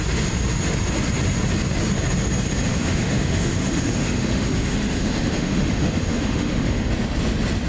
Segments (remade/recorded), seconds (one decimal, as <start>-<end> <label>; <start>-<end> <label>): 0.0-2.7 recorded; 2.7-6.9 remade; 6.9-7.7 recorded